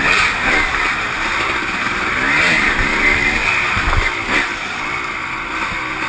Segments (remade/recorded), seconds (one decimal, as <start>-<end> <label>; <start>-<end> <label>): 0.0-6.1 recorded